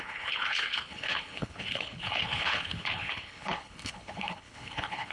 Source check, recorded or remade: remade